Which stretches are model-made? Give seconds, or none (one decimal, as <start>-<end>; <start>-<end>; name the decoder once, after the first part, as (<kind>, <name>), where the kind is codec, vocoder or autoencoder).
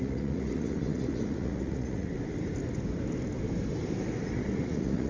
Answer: 0.0-2.1 (vocoder, Vocos); 4.6-5.1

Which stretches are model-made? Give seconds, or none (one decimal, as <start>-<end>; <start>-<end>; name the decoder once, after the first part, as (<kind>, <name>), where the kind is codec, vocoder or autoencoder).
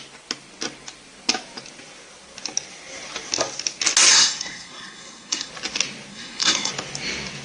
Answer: 4.1-5.5 (codec, SNAC); 6.1-6.7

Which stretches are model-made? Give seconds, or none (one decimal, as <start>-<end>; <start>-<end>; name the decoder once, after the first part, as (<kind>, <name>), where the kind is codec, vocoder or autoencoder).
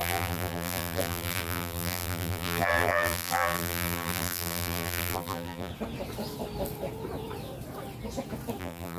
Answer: 0.0-5.7 (vocoder, BigVGAN v2); 8.6-9.0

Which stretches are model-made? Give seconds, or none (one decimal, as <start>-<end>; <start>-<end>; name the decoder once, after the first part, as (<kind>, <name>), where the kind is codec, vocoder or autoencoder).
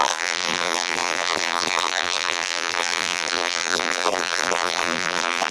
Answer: 0.0-5.5 (vocoder, BigVGAN v2)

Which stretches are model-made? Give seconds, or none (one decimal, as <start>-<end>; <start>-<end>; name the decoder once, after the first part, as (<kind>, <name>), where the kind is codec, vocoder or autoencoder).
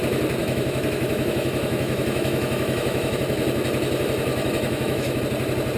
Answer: 0.4-3.2 (autoencoder, DAC-VAE); 4.3-5.2